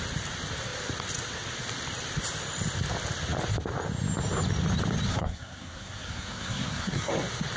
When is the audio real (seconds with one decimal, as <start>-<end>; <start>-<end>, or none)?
0.0-5.1; 7.1-7.6